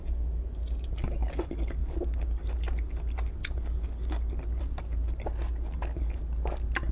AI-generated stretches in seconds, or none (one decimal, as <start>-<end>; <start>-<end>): none